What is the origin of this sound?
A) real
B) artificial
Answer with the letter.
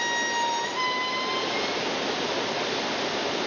A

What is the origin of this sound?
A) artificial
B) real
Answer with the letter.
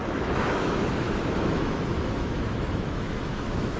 A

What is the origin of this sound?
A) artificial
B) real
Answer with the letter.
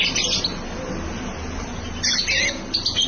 B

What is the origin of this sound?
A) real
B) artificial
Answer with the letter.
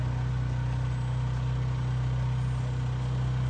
A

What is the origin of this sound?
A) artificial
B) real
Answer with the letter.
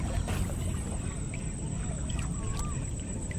B